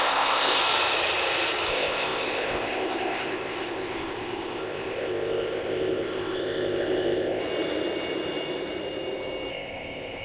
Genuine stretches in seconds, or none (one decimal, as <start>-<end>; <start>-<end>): 0.6-1.7; 7.4-9.5

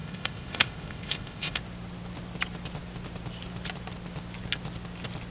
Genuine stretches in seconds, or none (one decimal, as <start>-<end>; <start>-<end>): 1.6-5.3

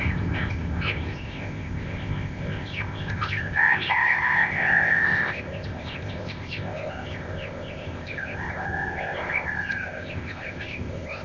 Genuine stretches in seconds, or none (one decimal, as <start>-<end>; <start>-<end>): none

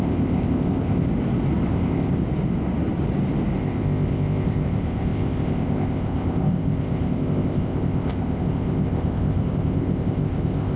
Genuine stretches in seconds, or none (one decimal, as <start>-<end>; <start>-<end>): 1.1-1.7; 2.2-3.6

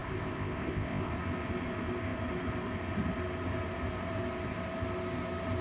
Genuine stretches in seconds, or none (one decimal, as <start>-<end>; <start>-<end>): 1.1-5.6